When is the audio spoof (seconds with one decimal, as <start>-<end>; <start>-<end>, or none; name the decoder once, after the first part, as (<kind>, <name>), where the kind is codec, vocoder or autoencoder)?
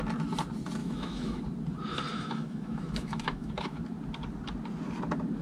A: 0.8-1.4 (autoencoder, DAC-VAE); 2.1-3.8